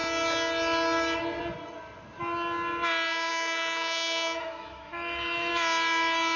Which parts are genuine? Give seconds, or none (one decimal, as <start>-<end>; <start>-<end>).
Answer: 0.0-3.3; 5.5-6.4